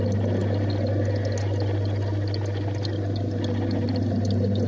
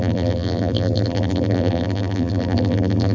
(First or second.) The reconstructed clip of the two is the second